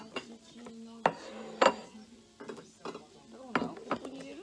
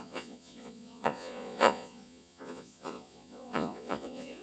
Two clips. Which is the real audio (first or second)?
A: first